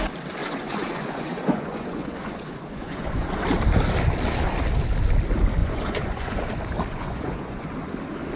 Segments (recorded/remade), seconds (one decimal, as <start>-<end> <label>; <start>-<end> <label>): 0.0-0.4 recorded; 0.4-3.3 remade; 3.3-5.6 recorded; 5.6-6.4 remade; 6.4-6.9 recorded; 6.9-7.7 remade; 7.7-8.4 recorded